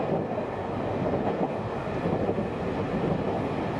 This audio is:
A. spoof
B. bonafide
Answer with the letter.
B